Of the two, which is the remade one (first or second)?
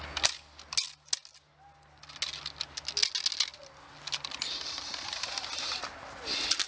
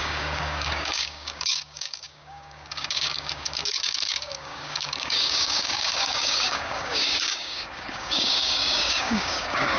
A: second